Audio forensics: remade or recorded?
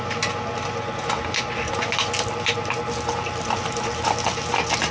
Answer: recorded